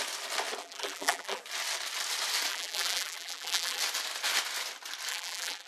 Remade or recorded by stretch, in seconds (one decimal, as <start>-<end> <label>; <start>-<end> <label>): 0.0-0.6 recorded; 0.6-1.4 remade; 1.4-2.5 recorded; 2.5-3.8 remade; 3.8-5.1 recorded; 5.1-5.7 remade

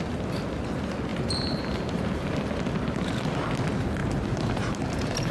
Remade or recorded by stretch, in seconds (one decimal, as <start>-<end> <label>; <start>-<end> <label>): 0.0-1.1 recorded; 1.1-2.5 remade; 2.5-4.0 recorded; 4.0-5.3 remade